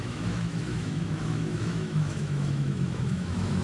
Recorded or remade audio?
remade